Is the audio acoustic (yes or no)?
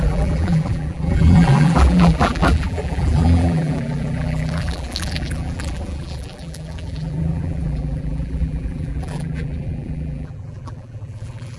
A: no